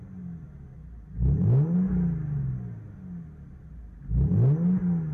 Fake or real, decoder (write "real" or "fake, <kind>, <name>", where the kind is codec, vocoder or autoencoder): real